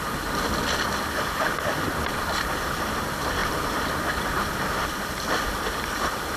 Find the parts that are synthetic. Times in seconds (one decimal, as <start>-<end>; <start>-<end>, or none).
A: none